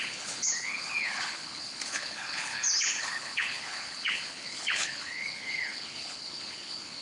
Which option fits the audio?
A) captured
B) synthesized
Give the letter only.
B